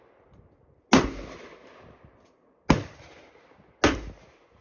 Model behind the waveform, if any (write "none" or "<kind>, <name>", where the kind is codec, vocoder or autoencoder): none